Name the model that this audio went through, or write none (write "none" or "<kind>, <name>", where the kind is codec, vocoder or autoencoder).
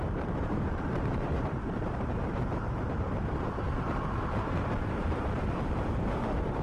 vocoder, BigVGAN v2